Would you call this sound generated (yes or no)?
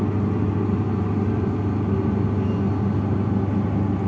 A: no